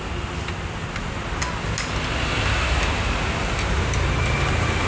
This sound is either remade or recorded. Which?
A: recorded